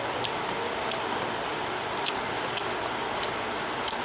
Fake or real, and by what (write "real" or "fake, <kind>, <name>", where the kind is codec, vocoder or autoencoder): real